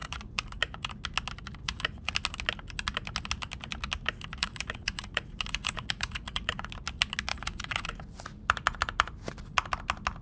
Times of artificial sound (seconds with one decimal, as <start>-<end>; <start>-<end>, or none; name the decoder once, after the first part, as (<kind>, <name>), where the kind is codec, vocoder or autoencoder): 0.0-0.9 (vocoder, Vocos); 1.6-2.1; 4.4-6.7; 7.3-7.9

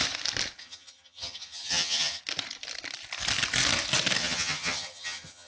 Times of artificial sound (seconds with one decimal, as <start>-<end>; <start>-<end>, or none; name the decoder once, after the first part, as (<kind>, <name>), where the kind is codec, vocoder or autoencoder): 0.6-2.2 (vocoder, HiFi-GAN); 4.2-5.5

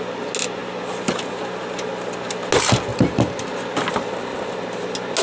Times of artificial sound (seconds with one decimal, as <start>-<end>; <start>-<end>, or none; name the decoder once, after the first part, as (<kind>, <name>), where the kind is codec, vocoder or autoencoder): 2.9-3.5 (vocoder, BigVGAN v2)

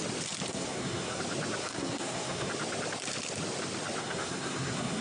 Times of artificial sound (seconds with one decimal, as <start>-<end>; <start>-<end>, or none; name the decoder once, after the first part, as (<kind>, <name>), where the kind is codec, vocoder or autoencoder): 0.5-1.2 (codec, SNAC); 1.6-2.5; 4.0-5.0

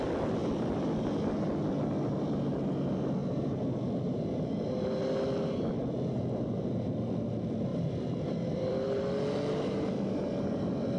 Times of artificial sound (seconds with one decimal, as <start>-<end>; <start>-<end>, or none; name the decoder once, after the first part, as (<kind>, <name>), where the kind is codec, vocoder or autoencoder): 0.4-1.1 (vocoder, BigVGAN v2); 3.2-4.2; 7.7-9.0

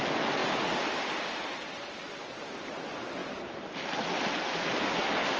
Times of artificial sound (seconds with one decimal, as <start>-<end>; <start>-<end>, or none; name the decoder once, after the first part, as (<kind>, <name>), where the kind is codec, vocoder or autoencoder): none

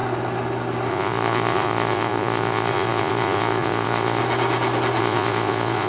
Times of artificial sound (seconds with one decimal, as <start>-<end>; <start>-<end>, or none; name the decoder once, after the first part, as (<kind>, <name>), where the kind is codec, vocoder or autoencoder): 0.9-4.2 (vocoder, Vocos); 5.0-5.9

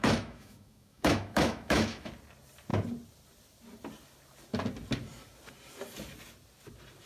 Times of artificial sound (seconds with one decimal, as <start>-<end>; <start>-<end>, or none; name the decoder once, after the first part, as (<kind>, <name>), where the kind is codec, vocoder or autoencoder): 0.0-2.1 (autoencoder, DAC-VAE)